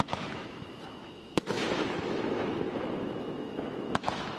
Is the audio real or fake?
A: fake